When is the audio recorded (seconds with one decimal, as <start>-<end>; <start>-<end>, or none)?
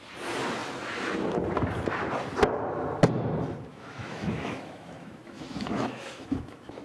0.0-3.7